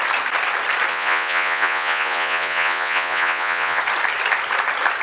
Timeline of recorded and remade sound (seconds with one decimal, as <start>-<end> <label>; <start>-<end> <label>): 0.0-0.9 recorded; 0.9-3.8 remade; 3.8-5.0 recorded